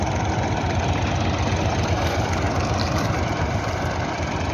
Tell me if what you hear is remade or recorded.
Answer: recorded